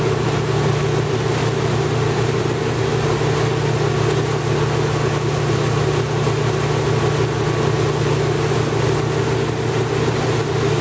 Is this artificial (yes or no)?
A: no